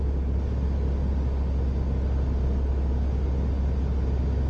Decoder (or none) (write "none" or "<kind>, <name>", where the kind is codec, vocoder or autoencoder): none